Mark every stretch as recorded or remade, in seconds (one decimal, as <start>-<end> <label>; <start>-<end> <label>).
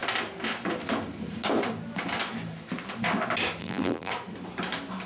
0.0-3.6 recorded; 3.6-4.1 remade; 4.1-5.1 recorded